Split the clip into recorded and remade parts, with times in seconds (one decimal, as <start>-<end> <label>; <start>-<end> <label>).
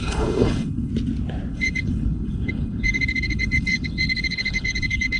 0.0-0.9 remade; 0.9-1.5 recorded; 1.5-5.2 remade